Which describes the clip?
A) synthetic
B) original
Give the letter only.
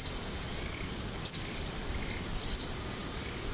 B